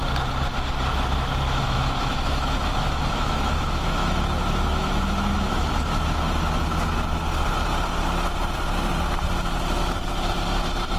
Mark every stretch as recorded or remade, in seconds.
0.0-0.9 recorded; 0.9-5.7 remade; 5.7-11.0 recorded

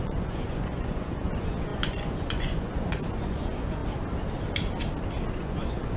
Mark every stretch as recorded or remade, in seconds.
0.0-3.8 remade; 3.8-5.3 recorded; 5.3-6.0 remade

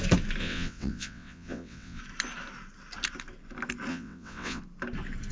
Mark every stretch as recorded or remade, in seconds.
0.0-0.4 recorded; 0.4-2.0 remade; 2.0-3.9 recorded; 3.9-4.6 remade; 4.6-5.3 recorded

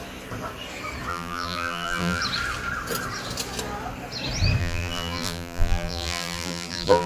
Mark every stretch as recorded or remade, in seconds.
0.0-1.1 recorded; 1.1-2.2 remade; 2.2-4.6 recorded; 4.6-7.1 remade

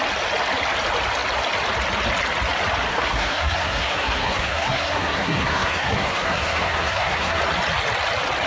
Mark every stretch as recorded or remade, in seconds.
0.0-2.9 recorded; 2.9-7.4 remade; 7.4-8.5 recorded

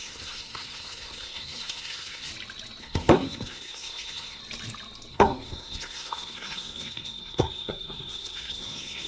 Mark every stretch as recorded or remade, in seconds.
0.0-2.3 remade; 2.3-2.8 recorded; 2.8-4.4 remade; 4.4-5.1 recorded; 5.1-9.1 remade

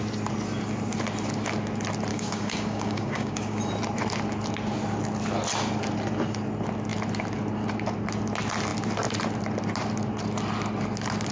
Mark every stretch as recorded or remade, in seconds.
0.0-2.1 recorded; 2.1-3.6 remade; 3.6-11.3 recorded